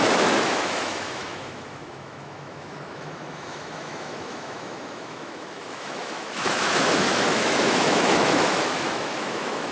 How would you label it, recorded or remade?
remade